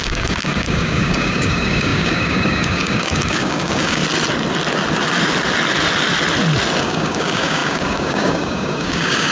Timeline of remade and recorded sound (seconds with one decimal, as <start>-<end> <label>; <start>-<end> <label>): 0.0-4.0 remade; 4.0-6.8 recorded; 6.8-9.3 remade